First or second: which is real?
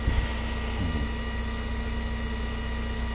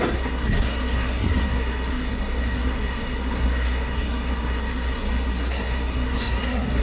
first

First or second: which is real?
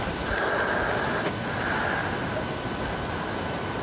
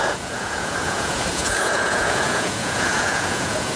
first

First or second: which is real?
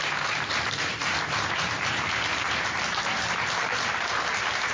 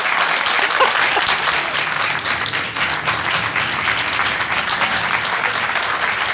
second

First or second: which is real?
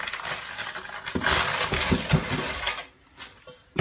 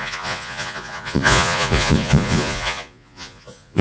first